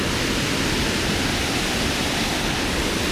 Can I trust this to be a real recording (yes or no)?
no